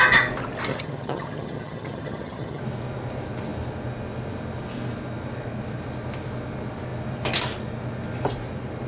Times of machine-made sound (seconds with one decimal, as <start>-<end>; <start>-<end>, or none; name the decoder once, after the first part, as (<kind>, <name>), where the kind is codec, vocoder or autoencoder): 0.7-2.6 (vocoder, HiFi-GAN)